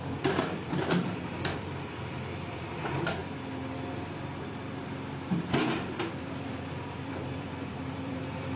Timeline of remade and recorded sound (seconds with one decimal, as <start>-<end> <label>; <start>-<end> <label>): 0.0-3.2 remade; 3.2-6.2 recorded; 6.2-8.6 remade